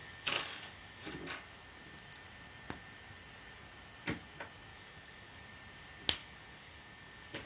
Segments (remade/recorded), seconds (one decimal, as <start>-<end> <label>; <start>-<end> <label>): 0.0-1.2 remade; 1.2-4.7 recorded; 4.7-5.4 remade; 5.4-6.2 recorded; 6.2-7.5 remade